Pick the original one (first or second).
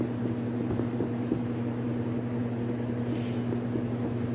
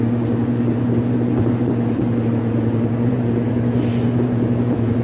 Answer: first